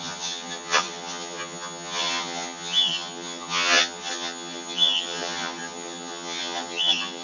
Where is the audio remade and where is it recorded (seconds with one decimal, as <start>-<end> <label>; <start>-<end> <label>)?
0.0-7.2 remade